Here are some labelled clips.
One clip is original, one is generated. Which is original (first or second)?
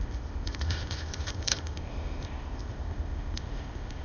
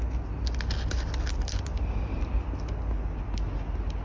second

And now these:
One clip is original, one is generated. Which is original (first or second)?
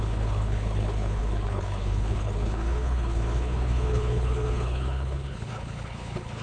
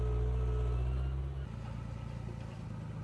second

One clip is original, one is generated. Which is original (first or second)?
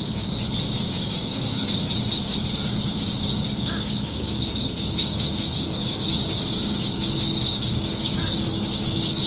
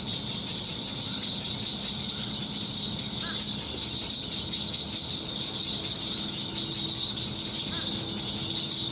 second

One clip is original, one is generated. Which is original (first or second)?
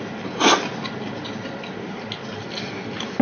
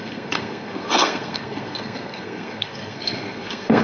first